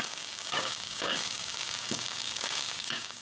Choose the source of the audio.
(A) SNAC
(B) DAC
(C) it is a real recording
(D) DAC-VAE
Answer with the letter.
B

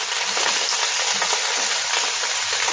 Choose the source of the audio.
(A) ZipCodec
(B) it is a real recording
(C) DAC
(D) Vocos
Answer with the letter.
B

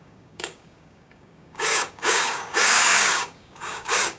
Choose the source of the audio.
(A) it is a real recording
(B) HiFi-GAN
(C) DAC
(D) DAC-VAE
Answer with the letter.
C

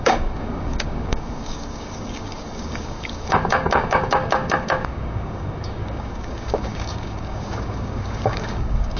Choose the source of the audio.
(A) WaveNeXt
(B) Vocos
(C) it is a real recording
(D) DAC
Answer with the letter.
D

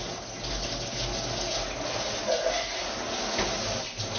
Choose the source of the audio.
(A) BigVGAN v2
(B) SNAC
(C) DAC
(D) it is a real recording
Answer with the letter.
D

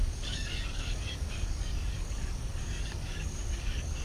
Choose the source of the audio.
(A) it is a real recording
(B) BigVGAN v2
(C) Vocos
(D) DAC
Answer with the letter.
D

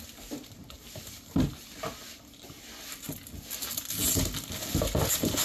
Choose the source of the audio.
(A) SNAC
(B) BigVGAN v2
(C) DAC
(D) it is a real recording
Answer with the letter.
D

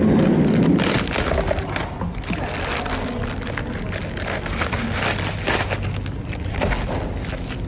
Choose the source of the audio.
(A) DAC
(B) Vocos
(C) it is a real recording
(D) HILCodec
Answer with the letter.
C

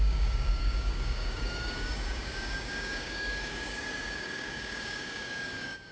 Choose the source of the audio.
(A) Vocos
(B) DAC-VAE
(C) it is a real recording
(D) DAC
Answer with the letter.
D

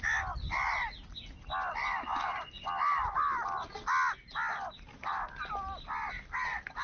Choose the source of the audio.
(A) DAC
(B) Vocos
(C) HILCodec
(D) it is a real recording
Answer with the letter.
D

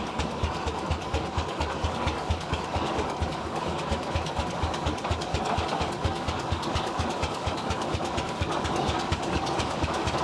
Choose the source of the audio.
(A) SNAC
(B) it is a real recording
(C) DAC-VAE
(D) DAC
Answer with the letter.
D